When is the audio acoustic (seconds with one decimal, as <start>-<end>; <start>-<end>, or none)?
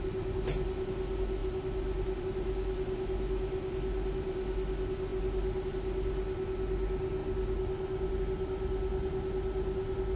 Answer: 0.0-10.2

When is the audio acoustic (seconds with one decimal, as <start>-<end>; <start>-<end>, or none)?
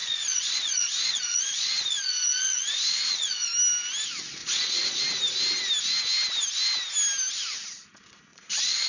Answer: 3.5-4.4; 5.0-8.3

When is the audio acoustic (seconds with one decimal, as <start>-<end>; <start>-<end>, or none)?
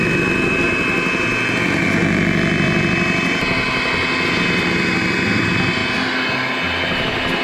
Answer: 0.0-7.4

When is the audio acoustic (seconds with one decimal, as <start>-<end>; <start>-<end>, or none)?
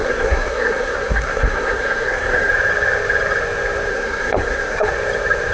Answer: 2.5-3.9; 4.9-5.5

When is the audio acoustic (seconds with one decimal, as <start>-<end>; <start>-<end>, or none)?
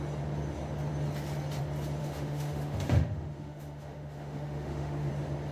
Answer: 0.0-2.0; 5.1-5.5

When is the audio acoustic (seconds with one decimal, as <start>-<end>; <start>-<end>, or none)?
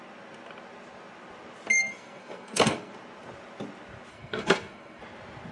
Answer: 0.0-1.7; 2.9-4.1; 5.0-5.5